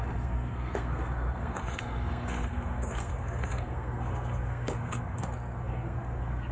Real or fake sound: fake